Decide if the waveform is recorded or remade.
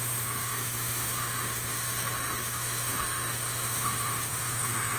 remade